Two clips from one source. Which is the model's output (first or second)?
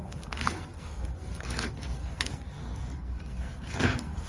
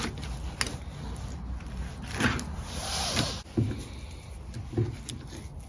first